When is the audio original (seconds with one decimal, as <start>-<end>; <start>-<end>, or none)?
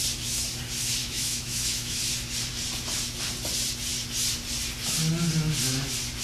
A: 0.0-1.0; 2.0-6.2